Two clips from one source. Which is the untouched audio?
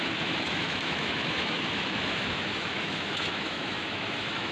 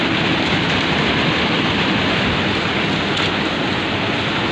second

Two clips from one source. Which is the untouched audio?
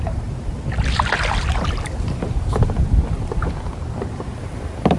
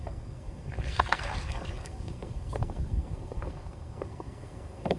first